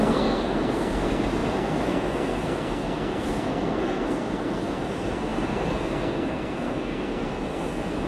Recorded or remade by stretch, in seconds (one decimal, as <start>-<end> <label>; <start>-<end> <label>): 0.0-8.1 remade